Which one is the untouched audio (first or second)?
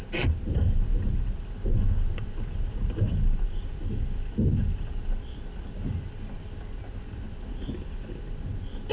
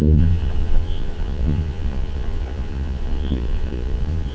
first